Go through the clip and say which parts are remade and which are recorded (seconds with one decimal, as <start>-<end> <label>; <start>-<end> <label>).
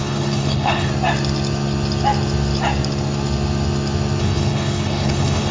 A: 0.0-0.9 remade; 0.9-4.2 recorded; 4.2-5.5 remade